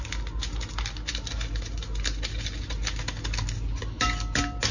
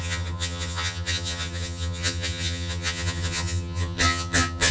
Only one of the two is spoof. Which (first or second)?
second